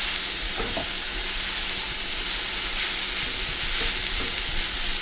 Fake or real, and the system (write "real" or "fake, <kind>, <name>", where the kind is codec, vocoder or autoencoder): real